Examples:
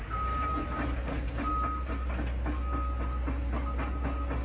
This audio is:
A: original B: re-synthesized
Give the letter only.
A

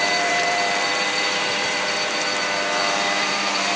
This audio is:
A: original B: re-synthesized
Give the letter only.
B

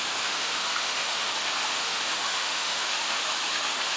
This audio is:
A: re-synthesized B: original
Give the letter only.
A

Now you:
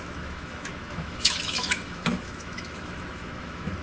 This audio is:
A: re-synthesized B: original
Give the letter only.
A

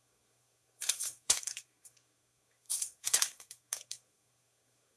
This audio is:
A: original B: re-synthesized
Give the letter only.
B